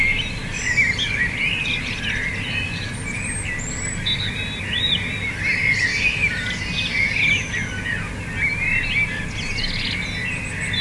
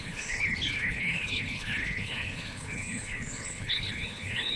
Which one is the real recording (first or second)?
first